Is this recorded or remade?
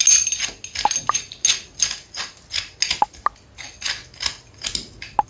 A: recorded